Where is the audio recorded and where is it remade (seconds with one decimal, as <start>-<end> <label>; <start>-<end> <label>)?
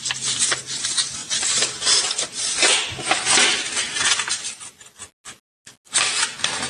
0.0-6.7 recorded